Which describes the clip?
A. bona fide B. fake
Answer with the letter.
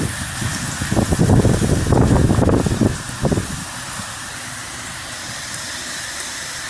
A